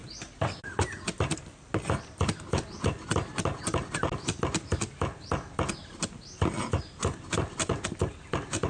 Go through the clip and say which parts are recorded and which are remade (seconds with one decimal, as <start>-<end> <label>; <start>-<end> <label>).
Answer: 0.0-8.7 recorded